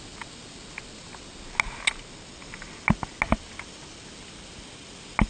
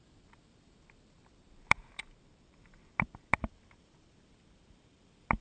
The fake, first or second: second